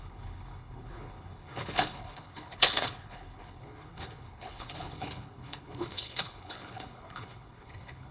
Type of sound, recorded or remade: remade